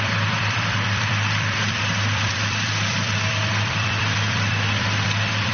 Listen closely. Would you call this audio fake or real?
fake